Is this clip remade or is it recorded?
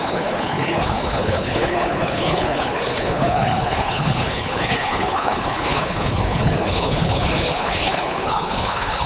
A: remade